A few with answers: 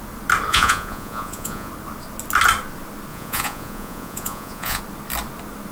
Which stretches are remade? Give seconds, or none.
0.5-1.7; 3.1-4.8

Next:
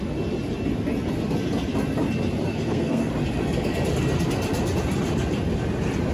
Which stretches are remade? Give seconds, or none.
2.5-3.1

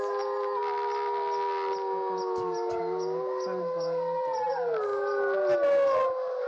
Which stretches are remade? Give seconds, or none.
none